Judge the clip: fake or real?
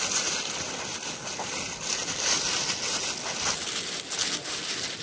real